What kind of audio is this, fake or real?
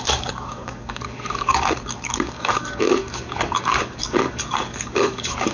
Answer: fake